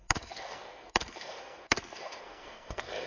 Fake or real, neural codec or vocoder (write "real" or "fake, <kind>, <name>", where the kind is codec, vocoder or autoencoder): fake, codec, SNAC